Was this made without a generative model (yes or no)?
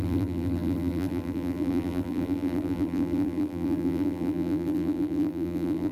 no